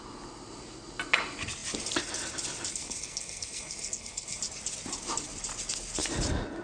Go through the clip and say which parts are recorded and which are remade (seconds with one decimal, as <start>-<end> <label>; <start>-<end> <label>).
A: 0.0-2.7 recorded; 2.7-4.4 remade; 4.4-6.6 recorded